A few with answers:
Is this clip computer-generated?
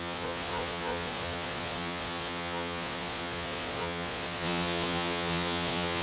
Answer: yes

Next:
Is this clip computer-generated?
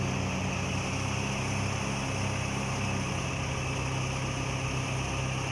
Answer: no